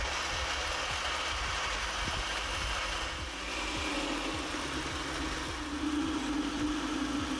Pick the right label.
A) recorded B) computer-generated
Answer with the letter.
A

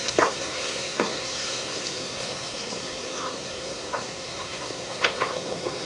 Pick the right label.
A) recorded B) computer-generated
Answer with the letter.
B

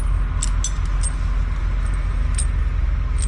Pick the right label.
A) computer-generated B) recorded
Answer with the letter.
B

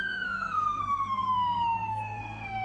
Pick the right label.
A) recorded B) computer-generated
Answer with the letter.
B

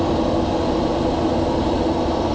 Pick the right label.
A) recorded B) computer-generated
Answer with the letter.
A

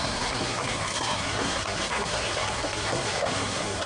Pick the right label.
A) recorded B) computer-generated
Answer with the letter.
B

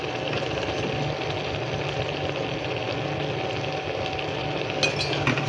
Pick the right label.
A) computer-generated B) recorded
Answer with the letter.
B